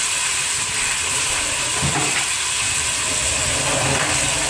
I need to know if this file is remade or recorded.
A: recorded